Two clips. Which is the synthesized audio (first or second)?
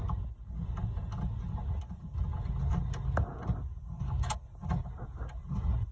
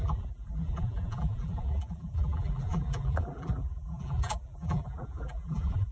second